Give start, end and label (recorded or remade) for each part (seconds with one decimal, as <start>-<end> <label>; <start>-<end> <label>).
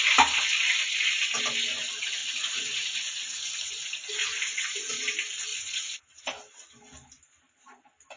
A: 0.0-2.2 recorded; 2.2-3.8 remade; 3.8-4.2 recorded; 4.2-4.9 remade; 4.9-5.5 recorded; 5.5-6.2 remade; 6.2-8.2 recorded